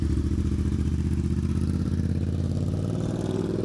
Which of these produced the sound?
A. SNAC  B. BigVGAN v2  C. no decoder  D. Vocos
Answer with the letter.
B